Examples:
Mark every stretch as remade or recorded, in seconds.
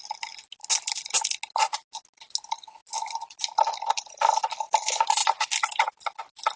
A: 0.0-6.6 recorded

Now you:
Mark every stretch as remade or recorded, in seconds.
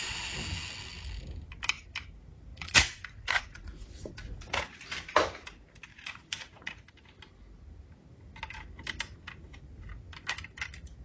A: 0.0-2.5 recorded; 2.5-4.8 remade; 4.8-5.9 recorded; 5.9-6.9 remade; 6.9-11.0 recorded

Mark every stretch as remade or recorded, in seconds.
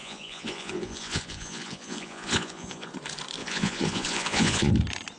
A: 0.0-2.9 remade; 2.9-3.4 recorded; 3.4-4.7 remade; 4.7-5.2 recorded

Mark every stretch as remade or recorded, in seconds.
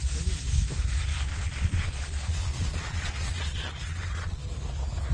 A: 0.0-1.3 recorded; 1.3-4.4 remade; 4.4-5.1 recorded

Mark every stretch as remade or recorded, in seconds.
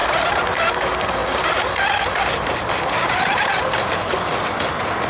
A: 0.0-5.1 recorded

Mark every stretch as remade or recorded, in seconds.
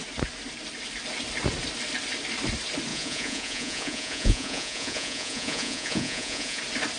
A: 0.0-2.9 recorded; 2.9-6.6 remade; 6.6-7.0 recorded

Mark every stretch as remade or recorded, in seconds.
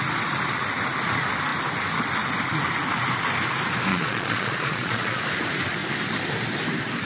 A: 0.0-3.9 recorded; 3.9-5.2 remade; 5.2-7.1 recorded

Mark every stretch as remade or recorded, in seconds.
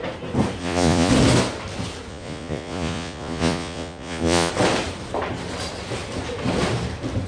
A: 0.0-0.6 recorded; 0.6-1.1 remade; 1.1-2.1 recorded; 2.1-4.5 remade; 4.5-7.3 recorded